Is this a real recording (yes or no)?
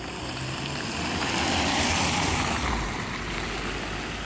yes